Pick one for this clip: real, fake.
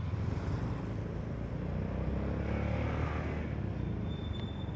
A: real